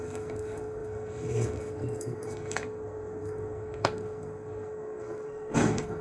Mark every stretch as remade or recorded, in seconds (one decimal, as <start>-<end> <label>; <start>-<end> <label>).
0.0-6.0 remade